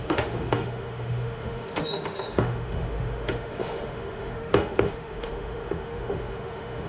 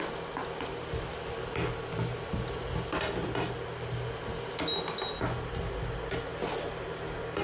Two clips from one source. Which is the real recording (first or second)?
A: second